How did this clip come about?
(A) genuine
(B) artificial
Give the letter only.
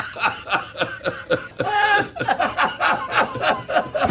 A